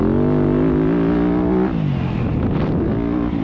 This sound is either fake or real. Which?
real